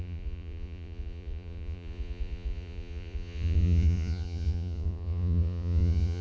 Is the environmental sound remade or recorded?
remade